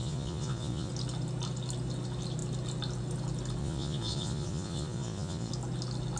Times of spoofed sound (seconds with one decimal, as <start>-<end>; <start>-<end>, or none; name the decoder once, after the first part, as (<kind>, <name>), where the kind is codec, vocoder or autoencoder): 0.0-0.9 (vocoder, Vocos); 3.6-5.5